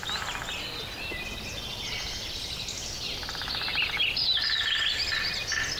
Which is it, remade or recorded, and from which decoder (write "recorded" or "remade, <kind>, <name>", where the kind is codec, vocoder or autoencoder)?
recorded